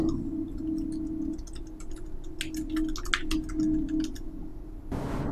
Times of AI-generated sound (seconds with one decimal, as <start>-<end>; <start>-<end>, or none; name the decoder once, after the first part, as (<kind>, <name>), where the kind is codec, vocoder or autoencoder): none